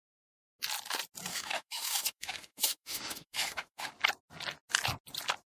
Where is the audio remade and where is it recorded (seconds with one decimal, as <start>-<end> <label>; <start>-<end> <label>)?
0.0-1.3 recorded; 1.3-3.9 remade; 3.9-5.6 recorded